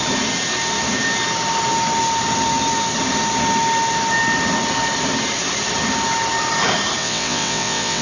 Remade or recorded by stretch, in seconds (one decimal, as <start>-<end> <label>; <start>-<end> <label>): 0.0-7.0 recorded; 7.0-8.0 remade